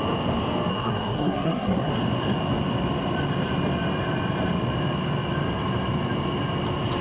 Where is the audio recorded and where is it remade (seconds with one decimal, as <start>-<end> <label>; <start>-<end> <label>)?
0.0-0.7 recorded; 0.7-1.9 remade; 1.9-7.0 recorded

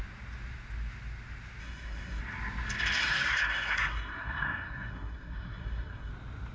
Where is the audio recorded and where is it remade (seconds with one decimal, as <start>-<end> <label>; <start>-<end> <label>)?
0.0-1.6 recorded; 1.6-2.2 remade; 2.2-3.0 recorded; 3.0-6.1 remade; 6.1-6.5 recorded

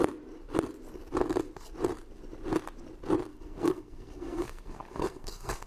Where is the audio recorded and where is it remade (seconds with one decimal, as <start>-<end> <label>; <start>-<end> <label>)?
0.0-3.3 recorded; 3.3-5.7 remade

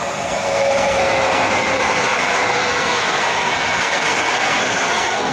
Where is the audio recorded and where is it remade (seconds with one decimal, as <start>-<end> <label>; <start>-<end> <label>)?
0.0-5.3 remade